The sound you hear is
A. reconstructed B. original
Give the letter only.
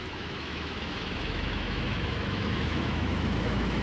A